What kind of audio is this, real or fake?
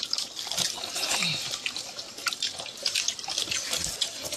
real